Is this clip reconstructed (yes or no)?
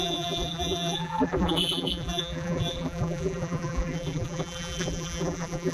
yes